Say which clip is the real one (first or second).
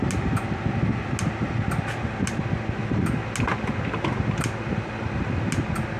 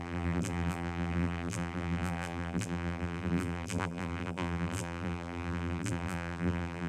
first